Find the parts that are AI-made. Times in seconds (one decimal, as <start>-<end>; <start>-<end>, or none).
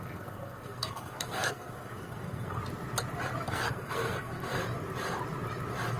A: 0.0-2.6; 3.5-4.6